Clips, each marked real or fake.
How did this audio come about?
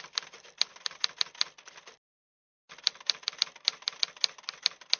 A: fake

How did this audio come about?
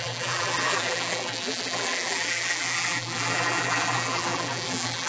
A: fake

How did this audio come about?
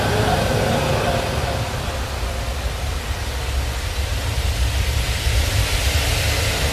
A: real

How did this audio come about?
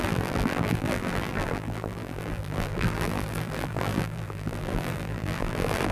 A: fake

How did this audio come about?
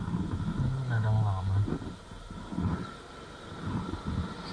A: real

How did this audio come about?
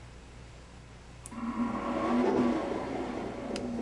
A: real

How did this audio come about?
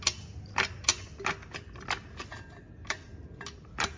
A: real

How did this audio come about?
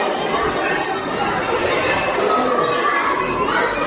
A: real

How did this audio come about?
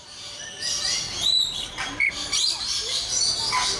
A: fake